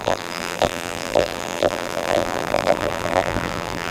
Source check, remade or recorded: remade